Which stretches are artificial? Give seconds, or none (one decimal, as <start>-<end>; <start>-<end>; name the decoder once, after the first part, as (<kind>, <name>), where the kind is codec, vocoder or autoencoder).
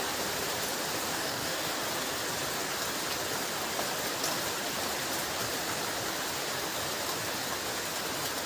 1.1-1.7 (codec, DAC)